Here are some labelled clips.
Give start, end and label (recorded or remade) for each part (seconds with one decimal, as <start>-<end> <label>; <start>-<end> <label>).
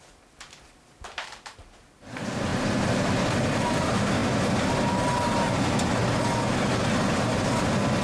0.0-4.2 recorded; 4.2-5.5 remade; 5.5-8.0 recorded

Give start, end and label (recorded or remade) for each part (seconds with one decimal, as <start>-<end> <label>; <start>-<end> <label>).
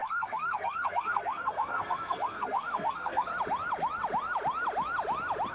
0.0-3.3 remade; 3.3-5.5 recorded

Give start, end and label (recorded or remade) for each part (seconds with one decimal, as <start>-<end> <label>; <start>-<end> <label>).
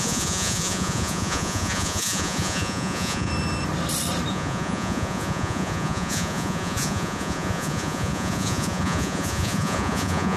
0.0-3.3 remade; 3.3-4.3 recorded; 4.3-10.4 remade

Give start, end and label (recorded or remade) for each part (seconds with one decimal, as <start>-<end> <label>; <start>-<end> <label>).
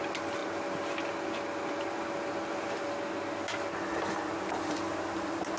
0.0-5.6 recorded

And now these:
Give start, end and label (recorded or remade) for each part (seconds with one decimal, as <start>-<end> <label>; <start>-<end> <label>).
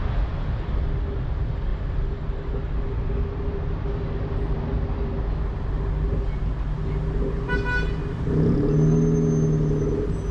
0.0-10.3 recorded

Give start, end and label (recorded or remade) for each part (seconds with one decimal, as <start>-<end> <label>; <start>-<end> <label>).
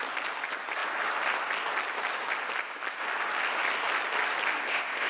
0.0-4.6 recorded; 4.6-5.1 remade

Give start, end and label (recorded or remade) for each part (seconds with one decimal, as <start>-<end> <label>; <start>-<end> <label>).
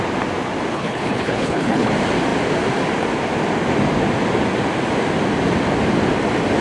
0.0-0.7 recorded; 0.7-1.9 remade; 1.9-6.6 recorded